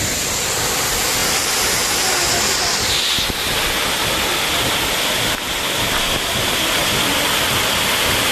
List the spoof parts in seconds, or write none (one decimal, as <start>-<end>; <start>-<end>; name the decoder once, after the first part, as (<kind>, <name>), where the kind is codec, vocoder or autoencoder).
none